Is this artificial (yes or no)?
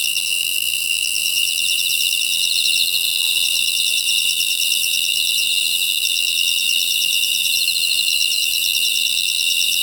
yes